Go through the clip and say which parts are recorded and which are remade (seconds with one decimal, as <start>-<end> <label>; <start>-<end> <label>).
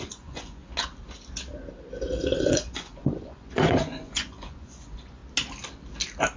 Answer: 0.0-0.6 remade; 0.6-2.4 recorded; 2.4-5.2 remade; 5.2-6.4 recorded